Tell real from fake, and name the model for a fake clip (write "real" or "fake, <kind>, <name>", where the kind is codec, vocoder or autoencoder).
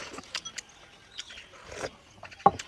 real